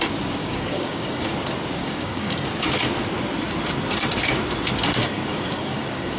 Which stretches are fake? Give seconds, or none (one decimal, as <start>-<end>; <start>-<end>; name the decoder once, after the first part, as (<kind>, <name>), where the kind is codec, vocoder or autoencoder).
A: 0.4-1.3 (codec, DAC); 1.8-2.5; 5.0-6.2